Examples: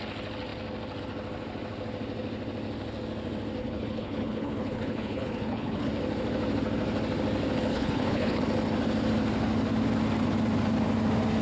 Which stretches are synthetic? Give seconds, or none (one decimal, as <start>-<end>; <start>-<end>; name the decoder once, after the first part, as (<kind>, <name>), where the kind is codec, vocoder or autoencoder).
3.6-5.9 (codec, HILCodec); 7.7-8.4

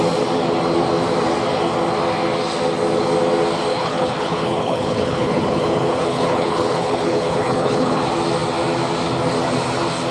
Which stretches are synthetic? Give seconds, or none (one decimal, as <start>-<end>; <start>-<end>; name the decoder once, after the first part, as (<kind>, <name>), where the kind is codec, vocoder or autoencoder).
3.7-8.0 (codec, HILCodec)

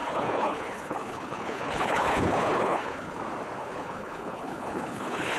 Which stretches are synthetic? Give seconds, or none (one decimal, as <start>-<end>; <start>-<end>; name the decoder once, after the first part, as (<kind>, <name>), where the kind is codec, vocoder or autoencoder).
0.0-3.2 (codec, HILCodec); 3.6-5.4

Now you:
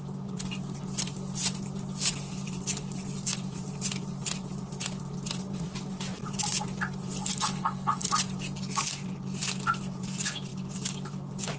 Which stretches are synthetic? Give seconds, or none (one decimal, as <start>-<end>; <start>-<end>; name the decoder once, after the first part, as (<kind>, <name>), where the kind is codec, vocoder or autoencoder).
7.3-8.1 (codec, HILCodec)